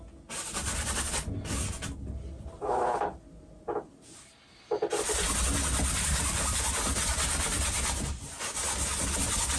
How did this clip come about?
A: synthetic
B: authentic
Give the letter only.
B